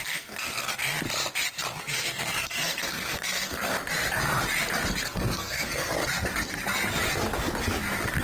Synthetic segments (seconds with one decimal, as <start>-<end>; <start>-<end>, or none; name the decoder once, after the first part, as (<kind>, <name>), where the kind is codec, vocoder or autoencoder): 0.0-0.8 (codec, SNAC); 1.8-3.7; 5.0-5.9